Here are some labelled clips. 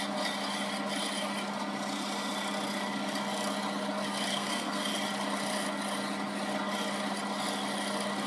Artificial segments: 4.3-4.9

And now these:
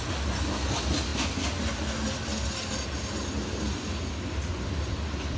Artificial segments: none

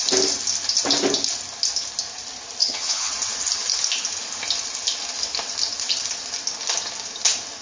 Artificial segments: 2.6-3.1

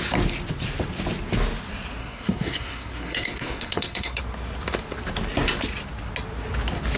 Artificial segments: 2.0-4.2

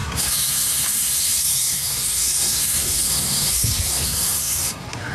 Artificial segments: 0.0-5.1

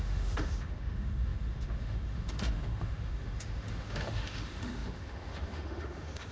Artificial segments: 0.0-6.3